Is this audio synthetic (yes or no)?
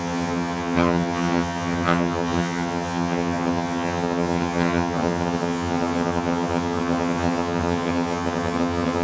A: yes